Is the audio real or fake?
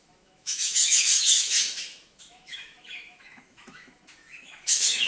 fake